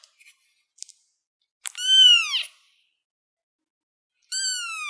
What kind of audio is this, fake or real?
real